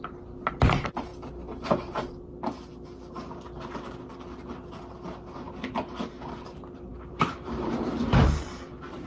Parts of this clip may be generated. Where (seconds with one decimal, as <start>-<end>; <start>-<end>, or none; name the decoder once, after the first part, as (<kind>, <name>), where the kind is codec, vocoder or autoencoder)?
6.9-8.2 (vocoder, BigVGAN v2)

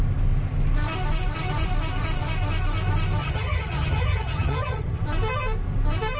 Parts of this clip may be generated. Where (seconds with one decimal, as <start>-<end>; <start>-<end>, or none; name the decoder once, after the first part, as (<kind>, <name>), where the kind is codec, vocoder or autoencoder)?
3.2-5.0 (vocoder, HiFi-GAN)